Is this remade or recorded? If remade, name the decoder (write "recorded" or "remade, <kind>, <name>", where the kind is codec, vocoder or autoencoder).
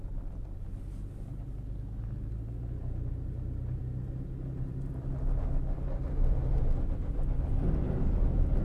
recorded